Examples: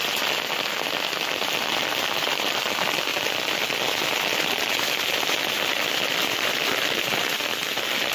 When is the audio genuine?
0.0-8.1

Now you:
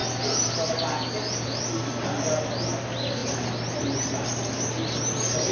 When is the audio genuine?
0.0-5.5

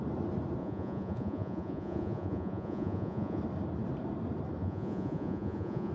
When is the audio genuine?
0.0-0.6; 3.4-4.6

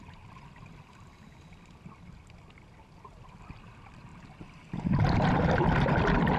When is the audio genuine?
0.0-6.4

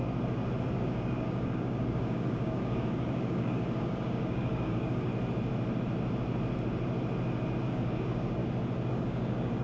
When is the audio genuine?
0.0-0.6; 5.1-7.6; 8.4-8.9

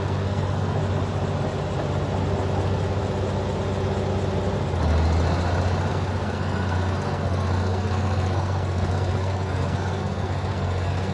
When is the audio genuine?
0.8-5.9